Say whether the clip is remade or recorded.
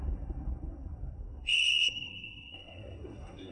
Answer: remade